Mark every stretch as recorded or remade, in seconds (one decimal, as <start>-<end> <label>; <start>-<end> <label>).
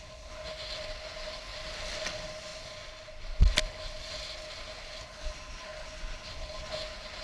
0.0-7.2 recorded